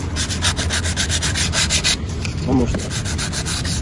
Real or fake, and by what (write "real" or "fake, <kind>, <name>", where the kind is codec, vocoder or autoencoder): real